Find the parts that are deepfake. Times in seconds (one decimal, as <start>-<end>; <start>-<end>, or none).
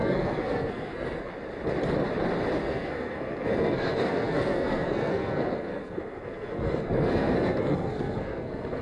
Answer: 0.0-1.3; 2.6-8.8